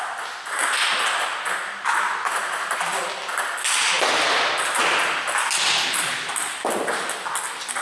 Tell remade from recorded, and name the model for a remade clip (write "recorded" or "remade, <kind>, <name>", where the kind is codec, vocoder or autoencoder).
recorded